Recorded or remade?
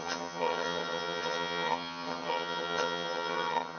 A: remade